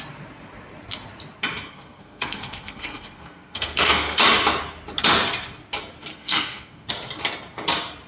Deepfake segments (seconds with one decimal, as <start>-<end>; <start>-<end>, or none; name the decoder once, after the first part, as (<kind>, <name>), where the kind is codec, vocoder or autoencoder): 1.7-4.2 (codec, SNAC); 6.1-6.9